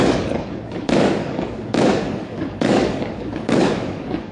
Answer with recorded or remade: remade